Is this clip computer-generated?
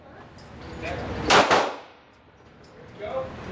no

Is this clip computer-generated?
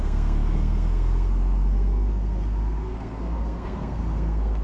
yes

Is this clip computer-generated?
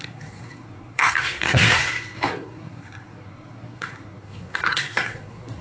yes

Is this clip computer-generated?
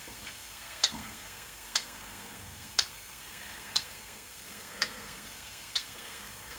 yes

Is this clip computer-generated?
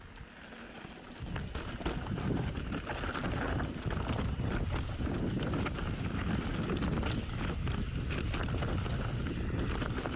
no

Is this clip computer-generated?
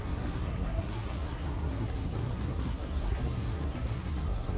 yes